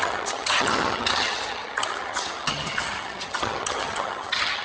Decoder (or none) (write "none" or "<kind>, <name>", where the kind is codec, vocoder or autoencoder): vocoder, HiFi-GAN